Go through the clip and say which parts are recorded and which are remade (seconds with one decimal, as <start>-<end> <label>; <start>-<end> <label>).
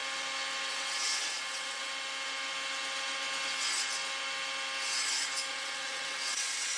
0.0-0.7 recorded; 0.7-1.9 remade; 1.9-5.5 recorded; 5.5-6.8 remade